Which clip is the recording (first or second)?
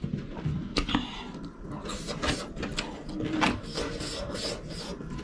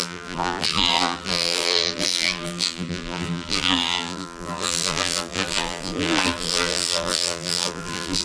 first